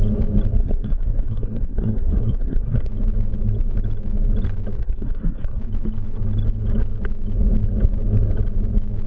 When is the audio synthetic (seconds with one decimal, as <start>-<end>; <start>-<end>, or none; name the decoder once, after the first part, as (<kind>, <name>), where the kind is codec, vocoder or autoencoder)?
0.6-2.9 (codec, SNAC); 4.8-5.6